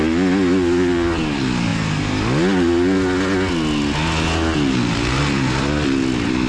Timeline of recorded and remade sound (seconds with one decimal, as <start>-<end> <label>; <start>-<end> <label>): 0.0-6.5 recorded